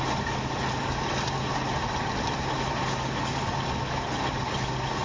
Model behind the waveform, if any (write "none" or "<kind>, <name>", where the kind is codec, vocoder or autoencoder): none